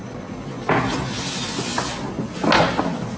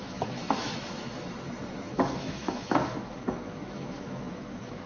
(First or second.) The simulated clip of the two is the second